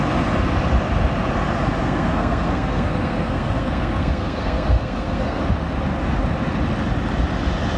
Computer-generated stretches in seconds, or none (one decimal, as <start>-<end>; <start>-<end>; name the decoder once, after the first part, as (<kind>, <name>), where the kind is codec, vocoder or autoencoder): 1.8-5.4 (codec, SNAC)

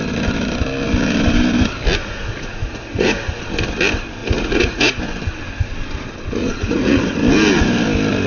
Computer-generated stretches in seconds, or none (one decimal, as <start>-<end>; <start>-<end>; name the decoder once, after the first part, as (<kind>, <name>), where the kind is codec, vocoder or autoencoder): 2.0-3.4 (vocoder, Vocos); 4.2-5.0; 6.4-7.0

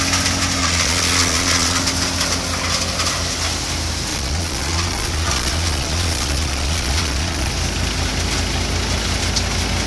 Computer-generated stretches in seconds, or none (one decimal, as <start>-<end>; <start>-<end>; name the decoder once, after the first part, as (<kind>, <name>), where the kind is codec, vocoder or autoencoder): 0.6-1.8 (vocoder, Vocos); 4.1-7.5

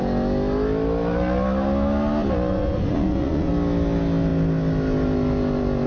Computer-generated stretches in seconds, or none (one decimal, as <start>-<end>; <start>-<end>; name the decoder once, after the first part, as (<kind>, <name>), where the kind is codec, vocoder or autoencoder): 2.5-3.5 (vocoder, Vocos)

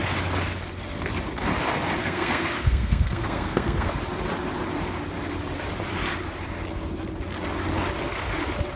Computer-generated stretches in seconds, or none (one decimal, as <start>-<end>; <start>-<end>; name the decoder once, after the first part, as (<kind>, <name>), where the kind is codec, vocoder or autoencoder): 2.0-3.9 (codec, SNAC)

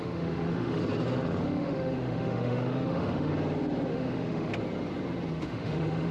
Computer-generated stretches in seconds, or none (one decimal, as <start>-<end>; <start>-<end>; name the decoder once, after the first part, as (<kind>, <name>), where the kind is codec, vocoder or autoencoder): 0.0-0.8 (autoencoder, DAC-VAE); 1.4-3.3; 3.9-4.5; 5.3-6.1

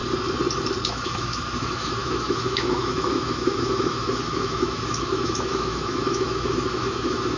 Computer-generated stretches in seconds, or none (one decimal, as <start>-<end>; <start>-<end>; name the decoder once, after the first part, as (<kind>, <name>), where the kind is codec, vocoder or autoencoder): 0.9-7.4 (autoencoder, DAC-VAE)

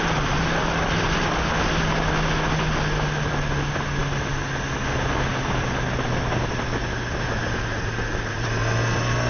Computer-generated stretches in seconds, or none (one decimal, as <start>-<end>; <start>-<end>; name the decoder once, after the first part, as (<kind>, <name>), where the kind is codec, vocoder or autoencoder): none